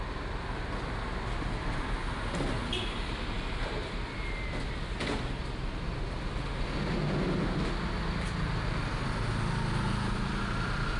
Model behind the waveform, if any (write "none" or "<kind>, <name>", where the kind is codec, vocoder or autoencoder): none